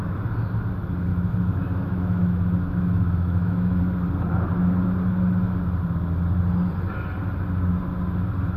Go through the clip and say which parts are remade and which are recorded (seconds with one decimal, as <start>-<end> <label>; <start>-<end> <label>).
0.0-1.1 recorded; 1.1-3.8 remade; 3.8-8.6 recorded